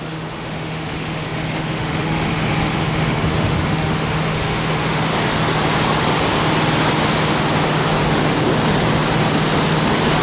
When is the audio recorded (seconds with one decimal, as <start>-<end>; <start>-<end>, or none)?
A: 5.1-10.2